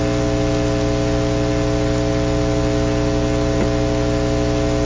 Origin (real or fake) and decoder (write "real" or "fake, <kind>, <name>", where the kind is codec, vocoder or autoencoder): real